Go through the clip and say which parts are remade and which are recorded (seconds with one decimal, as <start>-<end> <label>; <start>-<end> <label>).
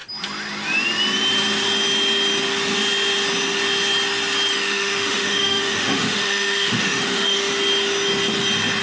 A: 0.0-4.5 recorded; 4.5-7.5 remade; 7.5-8.8 recorded